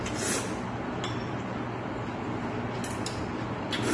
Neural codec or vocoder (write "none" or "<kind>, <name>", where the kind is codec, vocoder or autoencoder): none